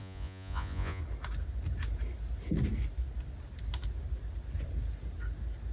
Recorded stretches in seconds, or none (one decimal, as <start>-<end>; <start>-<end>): 1.0-5.7